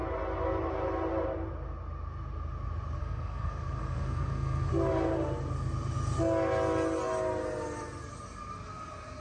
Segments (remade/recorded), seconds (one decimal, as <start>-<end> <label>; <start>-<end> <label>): 0.0-3.0 recorded; 3.0-4.7 remade; 4.7-9.2 recorded